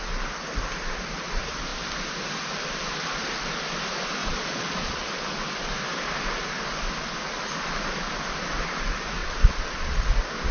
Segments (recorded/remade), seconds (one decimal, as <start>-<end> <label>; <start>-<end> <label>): 0.0-4.2 recorded; 4.2-5.1 remade; 5.1-9.2 recorded; 9.2-10.0 remade; 10.0-10.5 recorded